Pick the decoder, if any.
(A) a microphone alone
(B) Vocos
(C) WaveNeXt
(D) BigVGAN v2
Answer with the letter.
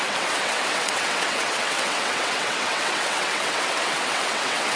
C